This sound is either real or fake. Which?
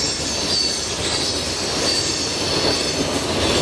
real